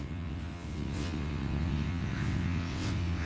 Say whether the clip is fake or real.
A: fake